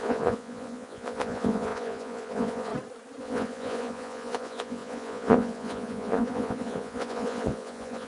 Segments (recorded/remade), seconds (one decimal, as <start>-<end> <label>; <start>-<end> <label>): 0.0-2.7 remade; 2.7-3.2 recorded; 3.2-8.1 remade